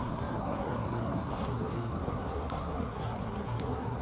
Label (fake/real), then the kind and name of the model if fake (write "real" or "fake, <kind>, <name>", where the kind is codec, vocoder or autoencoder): fake, codec, SNAC